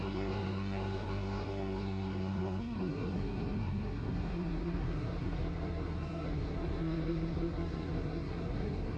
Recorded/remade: remade